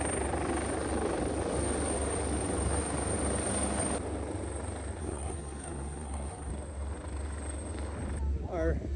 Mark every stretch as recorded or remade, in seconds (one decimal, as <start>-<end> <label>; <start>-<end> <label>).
0.0-5.0 recorded; 5.0-6.5 remade; 6.5-9.0 recorded